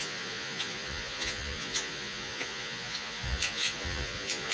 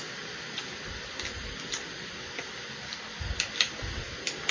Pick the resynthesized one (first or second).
first